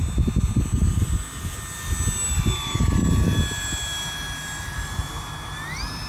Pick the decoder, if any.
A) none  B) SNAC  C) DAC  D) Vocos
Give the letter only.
A